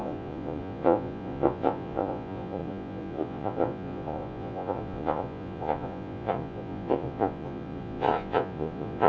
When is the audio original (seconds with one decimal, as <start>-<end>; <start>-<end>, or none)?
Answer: none